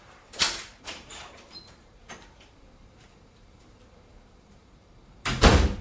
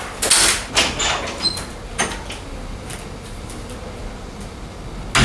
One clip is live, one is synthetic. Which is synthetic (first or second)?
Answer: first